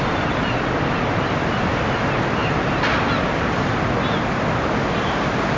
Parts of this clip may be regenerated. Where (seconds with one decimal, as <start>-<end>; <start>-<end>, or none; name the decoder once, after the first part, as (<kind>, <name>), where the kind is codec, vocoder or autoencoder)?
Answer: none